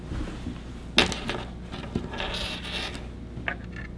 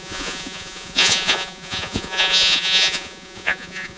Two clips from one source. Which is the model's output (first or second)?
second